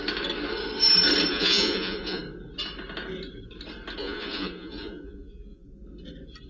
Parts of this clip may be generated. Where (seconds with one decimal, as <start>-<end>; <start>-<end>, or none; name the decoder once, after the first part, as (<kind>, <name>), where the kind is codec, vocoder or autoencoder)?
1.3-2.2 (vocoder, Vocos); 4.0-5.8